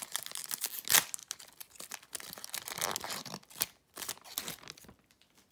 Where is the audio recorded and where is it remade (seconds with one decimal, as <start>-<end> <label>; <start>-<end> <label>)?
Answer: 0.0-5.5 recorded